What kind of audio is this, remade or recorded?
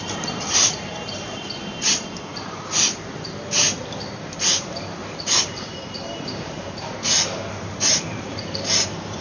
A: remade